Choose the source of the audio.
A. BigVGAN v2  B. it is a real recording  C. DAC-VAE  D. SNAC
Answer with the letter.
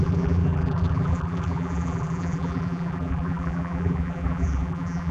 A